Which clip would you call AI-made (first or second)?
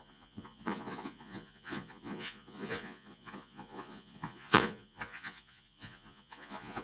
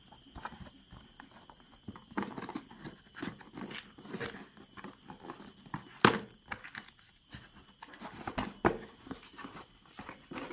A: first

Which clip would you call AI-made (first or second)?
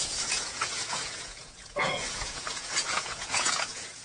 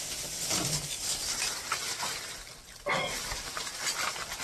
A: first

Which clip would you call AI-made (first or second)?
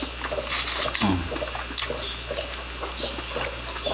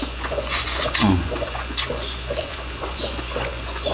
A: second